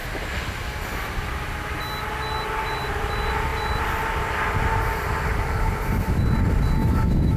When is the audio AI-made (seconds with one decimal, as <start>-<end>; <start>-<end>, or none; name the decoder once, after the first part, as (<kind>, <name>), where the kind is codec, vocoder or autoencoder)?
6.8-7.4 (autoencoder, DAC-VAE)